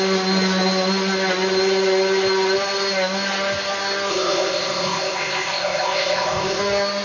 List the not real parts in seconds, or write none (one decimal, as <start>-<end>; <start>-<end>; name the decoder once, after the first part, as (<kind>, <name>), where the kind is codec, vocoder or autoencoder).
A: 4.1-6.6 (codec, ZipCodec)